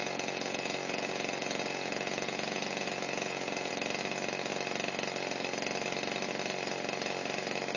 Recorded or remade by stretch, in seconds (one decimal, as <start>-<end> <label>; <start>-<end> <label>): 0.0-3.7 remade; 3.7-7.8 recorded